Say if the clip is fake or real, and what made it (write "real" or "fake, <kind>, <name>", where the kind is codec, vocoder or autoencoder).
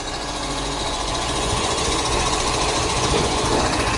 fake, vocoder, Vocos